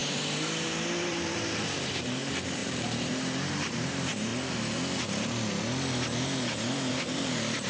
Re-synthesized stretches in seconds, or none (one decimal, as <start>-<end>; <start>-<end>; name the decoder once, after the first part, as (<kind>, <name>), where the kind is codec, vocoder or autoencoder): 1.0-4.3 (vocoder, BigVGAN v2); 6.9-7.7